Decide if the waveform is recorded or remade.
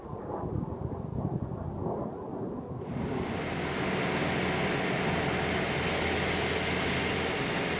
recorded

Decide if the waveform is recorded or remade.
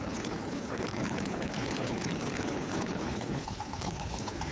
remade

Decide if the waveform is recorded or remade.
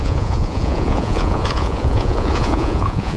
remade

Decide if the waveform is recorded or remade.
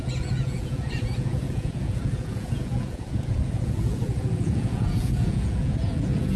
remade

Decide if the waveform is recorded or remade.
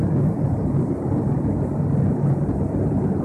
recorded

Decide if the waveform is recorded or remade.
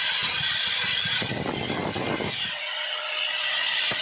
recorded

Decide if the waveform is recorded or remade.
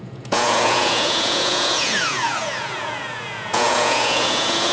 remade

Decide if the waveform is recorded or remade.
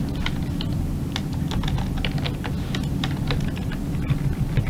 recorded